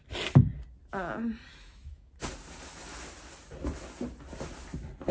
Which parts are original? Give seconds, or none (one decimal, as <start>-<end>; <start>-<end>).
0.0-1.5; 2.1-5.1